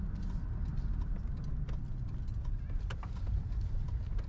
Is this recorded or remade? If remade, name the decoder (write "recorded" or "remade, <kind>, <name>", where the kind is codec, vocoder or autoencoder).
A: recorded